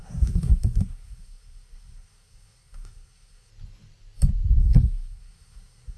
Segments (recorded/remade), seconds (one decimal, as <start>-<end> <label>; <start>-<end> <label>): 0.0-3.5 remade; 3.5-4.6 recorded; 4.6-6.0 remade